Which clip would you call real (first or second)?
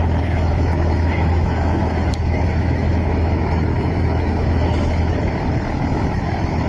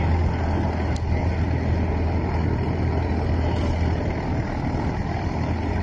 second